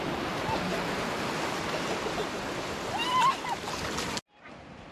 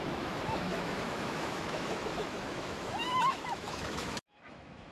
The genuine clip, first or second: first